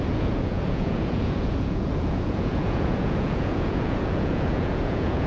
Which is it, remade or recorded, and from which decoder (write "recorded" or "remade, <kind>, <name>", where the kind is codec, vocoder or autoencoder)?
remade, vocoder, Vocos